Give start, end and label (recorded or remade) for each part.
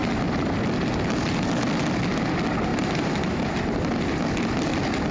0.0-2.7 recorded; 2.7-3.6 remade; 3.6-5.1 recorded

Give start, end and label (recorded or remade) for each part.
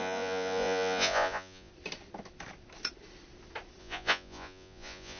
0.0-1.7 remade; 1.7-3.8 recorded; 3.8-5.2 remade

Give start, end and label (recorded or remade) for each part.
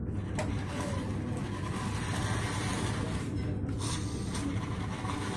0.0-5.4 recorded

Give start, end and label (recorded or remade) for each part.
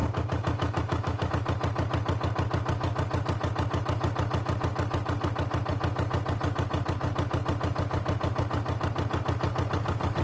0.0-1.3 remade; 1.3-10.2 recorded